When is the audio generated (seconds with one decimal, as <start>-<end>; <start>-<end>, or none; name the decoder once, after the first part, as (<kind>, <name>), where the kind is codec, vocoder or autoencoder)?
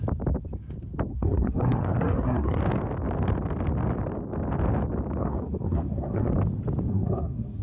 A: 1.1-2.6 (codec, SNAC); 5.2-6.3; 6.9-7.6